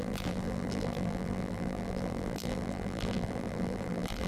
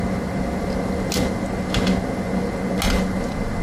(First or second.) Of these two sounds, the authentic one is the second